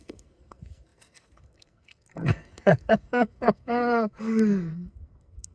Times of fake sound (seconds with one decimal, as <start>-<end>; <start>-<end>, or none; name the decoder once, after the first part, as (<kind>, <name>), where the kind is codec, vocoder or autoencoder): 0.0-5.5 (codec, SNAC)